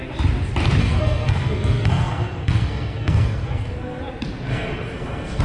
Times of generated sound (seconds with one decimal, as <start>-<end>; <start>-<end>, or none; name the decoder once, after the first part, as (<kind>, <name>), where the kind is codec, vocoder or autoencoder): 0.8-4.0 (codec, SNAC); 4.5-5.4